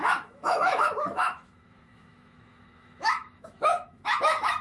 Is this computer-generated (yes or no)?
yes